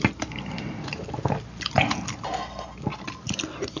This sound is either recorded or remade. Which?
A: recorded